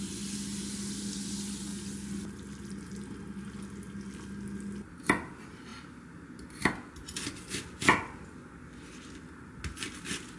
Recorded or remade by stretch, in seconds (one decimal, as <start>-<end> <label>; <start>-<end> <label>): 0.0-10.4 recorded